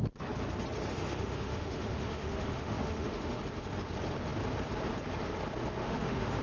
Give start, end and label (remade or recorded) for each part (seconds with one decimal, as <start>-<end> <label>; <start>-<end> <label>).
0.0-0.9 recorded; 0.9-3.4 remade; 3.4-5.8 recorded; 5.8-6.4 remade